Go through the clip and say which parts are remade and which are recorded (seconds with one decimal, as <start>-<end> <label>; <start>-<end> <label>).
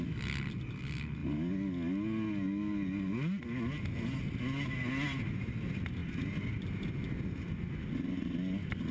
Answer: 0.0-8.9 recorded